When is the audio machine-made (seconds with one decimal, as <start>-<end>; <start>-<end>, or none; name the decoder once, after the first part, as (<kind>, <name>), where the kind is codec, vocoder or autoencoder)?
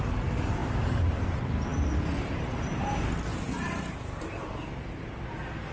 none